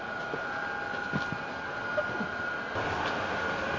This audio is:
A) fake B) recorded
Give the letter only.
B